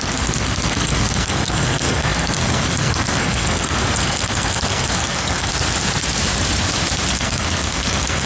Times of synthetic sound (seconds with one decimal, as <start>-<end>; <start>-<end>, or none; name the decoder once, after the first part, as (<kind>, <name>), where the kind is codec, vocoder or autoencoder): 0.0-5.5 (codec, SNAC); 7.1-8.3